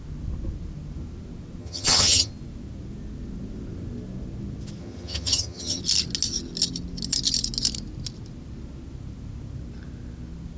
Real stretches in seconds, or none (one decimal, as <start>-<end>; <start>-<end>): 0.0-1.6; 2.3-4.8; 5.8-10.6